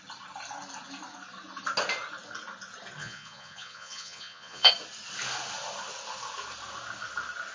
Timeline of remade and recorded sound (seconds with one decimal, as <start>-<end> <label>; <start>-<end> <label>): 0.0-3.0 recorded; 3.0-4.7 remade; 4.7-7.5 recorded